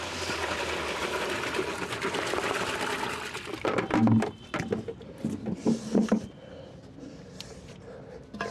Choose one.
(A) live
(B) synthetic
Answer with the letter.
A